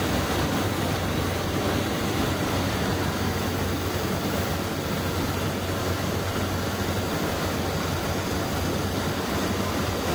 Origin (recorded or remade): recorded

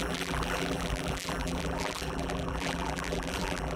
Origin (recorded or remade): remade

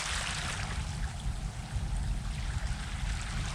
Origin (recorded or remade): recorded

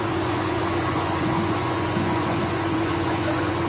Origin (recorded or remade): remade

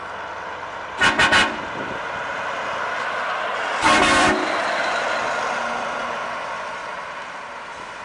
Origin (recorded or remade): remade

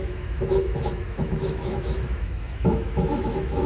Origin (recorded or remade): remade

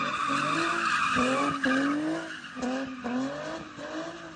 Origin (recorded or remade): recorded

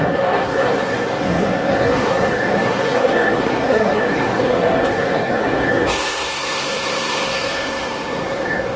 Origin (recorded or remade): remade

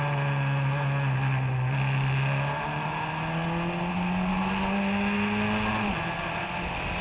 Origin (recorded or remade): recorded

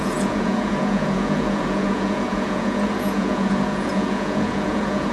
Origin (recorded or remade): remade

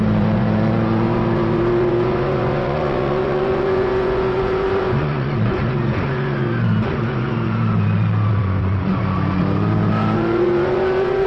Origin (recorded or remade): remade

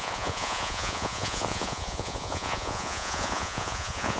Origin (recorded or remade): remade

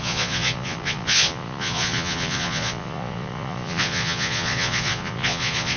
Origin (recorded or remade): remade